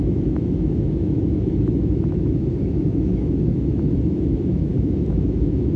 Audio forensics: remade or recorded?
remade